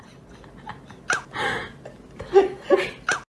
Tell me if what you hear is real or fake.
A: real